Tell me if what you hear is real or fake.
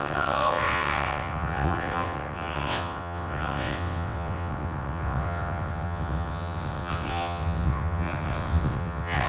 fake